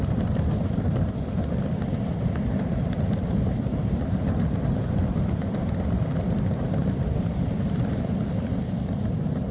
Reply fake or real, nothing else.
real